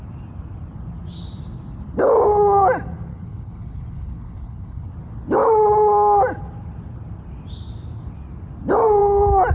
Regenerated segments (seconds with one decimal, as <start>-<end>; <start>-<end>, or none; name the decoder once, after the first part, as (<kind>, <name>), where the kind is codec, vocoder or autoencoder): 3.1-4.9 (codec, HILCodec)